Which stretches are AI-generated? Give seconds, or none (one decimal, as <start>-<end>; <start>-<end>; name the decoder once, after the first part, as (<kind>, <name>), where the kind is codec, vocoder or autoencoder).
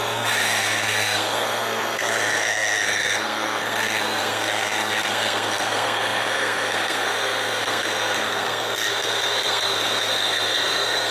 0.0-11.1 (codec, SNAC)